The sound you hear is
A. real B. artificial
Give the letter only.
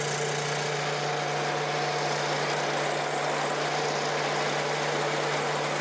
A